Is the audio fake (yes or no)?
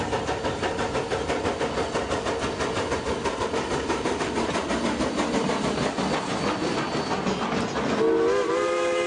no